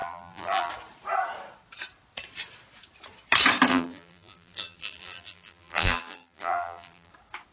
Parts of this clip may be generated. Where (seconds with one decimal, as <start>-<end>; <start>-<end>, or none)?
0.0-0.7; 3.7-7.1